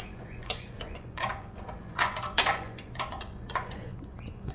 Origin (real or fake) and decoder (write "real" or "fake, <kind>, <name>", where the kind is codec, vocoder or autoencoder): fake, vocoder, Vocos